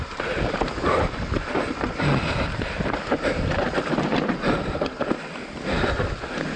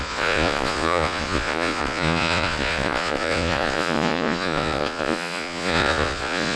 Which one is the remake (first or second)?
second